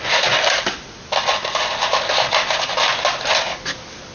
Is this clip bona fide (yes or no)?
yes